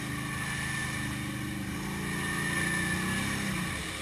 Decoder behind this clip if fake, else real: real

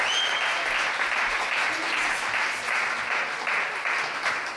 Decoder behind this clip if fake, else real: real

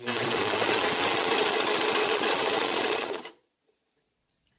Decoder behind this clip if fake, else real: fake, vocoder, Vocos